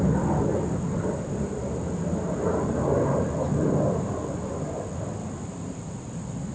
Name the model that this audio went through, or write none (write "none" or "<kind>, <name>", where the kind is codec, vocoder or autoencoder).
none